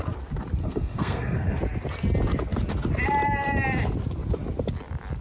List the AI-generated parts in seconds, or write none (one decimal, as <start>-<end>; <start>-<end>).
0.6-1.6